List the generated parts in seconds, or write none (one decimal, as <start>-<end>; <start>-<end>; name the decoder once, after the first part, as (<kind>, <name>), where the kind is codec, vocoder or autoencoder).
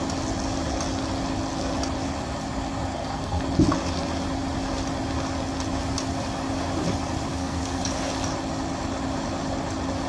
2.9-3.4 (codec, SNAC); 7.3-7.8